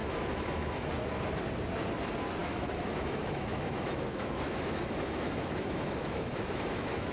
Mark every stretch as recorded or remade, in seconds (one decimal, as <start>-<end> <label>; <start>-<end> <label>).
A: 0.0-0.9 remade; 0.9-2.4 recorded; 2.4-7.1 remade